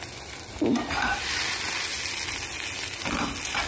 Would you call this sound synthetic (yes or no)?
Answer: no